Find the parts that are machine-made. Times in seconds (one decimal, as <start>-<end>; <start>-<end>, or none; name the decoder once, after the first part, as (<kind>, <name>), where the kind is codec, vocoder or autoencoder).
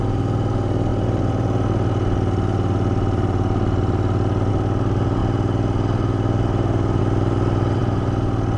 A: none